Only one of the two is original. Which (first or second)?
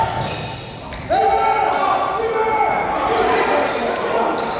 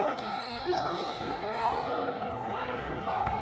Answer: first